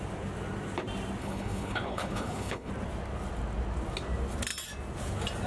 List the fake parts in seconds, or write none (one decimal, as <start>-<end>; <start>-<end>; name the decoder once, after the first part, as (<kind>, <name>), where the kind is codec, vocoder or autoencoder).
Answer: 1.2-2.7 (codec, HILCodec)